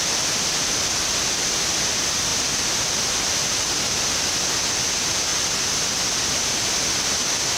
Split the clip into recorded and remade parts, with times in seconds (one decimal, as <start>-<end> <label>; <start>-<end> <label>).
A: 0.0-7.6 recorded